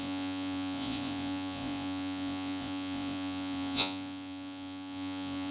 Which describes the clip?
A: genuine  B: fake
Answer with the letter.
B